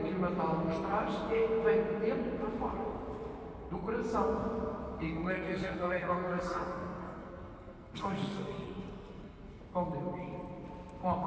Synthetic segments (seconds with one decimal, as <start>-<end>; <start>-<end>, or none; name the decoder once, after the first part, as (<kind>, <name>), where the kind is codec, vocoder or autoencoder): 5.0-9.6 (codec, SNAC)